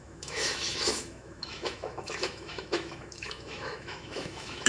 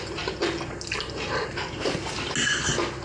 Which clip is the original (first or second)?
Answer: second